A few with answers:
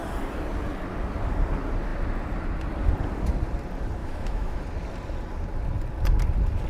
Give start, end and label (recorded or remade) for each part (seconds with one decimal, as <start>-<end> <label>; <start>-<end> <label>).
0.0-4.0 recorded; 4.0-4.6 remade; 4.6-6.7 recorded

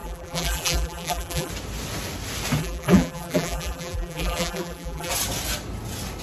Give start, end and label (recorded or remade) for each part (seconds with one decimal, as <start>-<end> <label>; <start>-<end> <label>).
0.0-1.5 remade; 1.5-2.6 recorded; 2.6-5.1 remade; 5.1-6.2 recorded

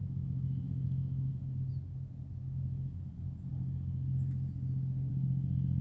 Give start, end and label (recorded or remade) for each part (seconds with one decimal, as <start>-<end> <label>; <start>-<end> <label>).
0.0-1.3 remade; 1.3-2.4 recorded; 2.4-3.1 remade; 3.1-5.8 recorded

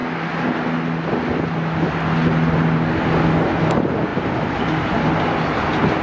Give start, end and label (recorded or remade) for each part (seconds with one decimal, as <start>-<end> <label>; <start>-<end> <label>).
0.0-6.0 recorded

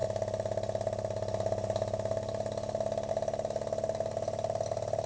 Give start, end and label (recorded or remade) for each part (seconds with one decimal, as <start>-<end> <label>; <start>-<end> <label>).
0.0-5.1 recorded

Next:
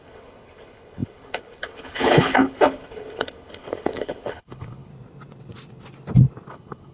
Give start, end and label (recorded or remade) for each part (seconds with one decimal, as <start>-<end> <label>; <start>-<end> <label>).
0.0-4.9 remade; 4.9-6.5 recorded; 6.5-6.9 remade